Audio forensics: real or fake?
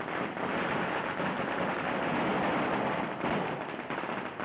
real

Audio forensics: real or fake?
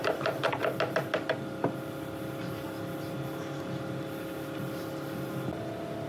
real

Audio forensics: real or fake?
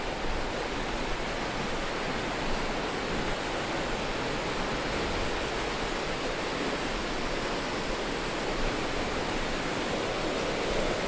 real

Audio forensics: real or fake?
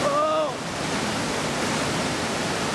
real